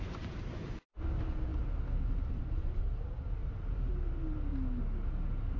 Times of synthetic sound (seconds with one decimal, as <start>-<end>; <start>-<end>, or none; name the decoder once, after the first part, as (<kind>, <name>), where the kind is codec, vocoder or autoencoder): 3.4-3.9 (vocoder, BigVGAN v2)